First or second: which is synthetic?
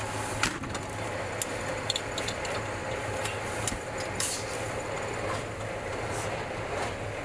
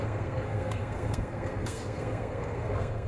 second